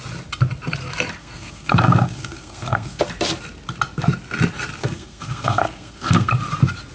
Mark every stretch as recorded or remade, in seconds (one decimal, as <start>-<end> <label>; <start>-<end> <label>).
0.0-1.2 recorded; 1.2-3.0 remade; 3.0-4.8 recorded; 4.8-6.3 remade; 6.3-6.9 recorded